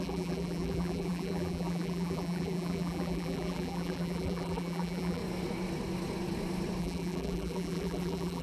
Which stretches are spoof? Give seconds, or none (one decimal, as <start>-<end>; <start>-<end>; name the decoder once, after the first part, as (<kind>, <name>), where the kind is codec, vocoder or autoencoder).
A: 0.0-5.2 (vocoder, BigVGAN v2); 6.8-8.4